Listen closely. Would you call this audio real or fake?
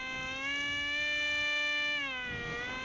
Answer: real